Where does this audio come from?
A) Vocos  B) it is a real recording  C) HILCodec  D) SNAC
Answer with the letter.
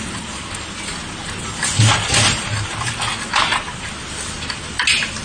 B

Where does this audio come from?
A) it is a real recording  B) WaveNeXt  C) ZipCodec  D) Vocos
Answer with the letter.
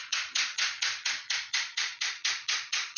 D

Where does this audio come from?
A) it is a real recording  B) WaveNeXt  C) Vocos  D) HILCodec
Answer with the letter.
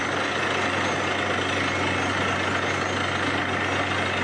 A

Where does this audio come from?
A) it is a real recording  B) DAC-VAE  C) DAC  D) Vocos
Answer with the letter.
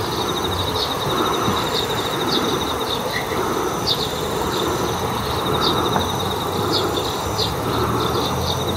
A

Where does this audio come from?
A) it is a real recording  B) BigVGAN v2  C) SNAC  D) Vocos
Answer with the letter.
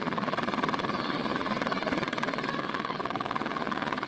D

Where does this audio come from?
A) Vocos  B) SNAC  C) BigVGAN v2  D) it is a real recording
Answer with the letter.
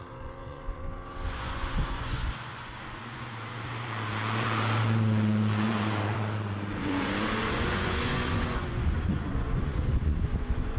A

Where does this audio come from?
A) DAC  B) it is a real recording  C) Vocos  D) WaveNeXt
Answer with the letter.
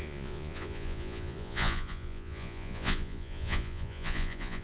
C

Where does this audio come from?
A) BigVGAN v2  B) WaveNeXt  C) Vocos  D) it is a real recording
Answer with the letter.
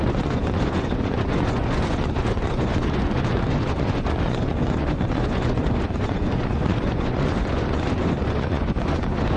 C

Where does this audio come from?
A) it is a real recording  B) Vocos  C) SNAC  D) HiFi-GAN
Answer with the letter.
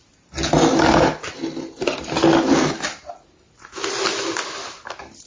A